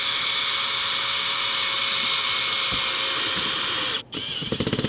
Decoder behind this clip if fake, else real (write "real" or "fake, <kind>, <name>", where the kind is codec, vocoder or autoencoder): real